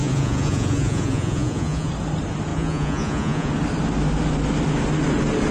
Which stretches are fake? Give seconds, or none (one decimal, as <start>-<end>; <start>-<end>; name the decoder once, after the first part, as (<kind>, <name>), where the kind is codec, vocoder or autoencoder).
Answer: 0.0-1.9 (vocoder, Vocos); 2.5-3.5